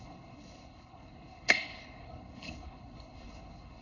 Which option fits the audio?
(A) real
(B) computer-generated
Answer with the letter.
B